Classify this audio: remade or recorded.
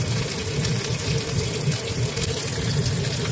recorded